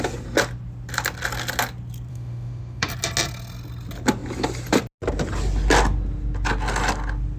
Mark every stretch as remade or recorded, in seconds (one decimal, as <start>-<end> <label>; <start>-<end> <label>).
0.0-2.1 recorded; 2.1-2.9 remade; 2.9-7.4 recorded